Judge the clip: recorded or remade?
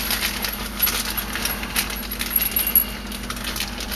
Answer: recorded